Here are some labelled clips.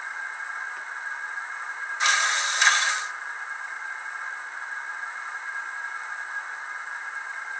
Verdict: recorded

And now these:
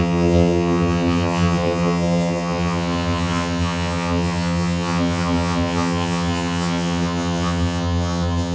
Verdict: remade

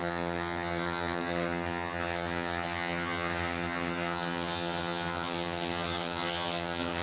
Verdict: remade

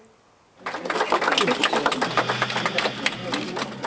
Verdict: recorded